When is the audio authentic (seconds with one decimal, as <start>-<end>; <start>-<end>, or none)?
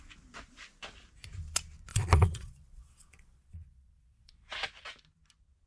0.0-1.9; 4.3-5.7